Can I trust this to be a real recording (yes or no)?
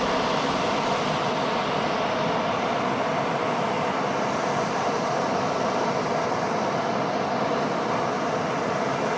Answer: yes